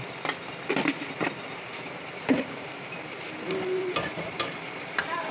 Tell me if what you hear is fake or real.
fake